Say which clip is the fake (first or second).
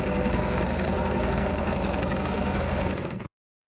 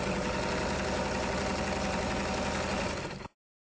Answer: first